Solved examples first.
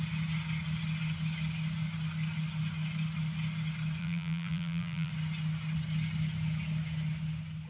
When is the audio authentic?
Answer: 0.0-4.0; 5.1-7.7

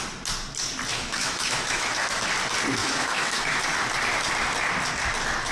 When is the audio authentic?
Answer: 0.0-0.9; 2.2-2.8; 3.6-5.5

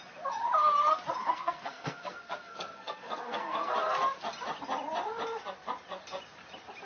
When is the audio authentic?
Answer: 0.0-1.3; 3.7-6.8

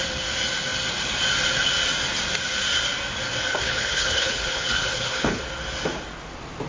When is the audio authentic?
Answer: 0.0-3.5; 5.4-6.7

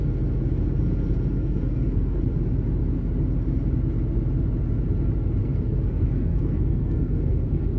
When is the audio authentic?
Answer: 0.0-1.4; 2.2-5.4

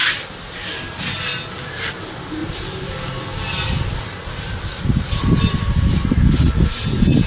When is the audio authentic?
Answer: 1.0-2.4; 6.4-7.3

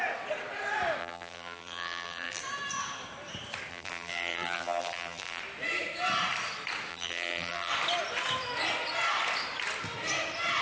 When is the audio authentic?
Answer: 0.0-1.0; 2.4-3.7; 5.4-6.9; 7.7-10.6